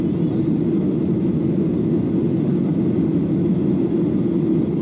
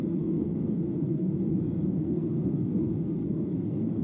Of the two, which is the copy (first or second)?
second